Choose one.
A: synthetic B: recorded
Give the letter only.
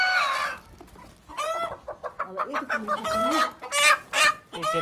B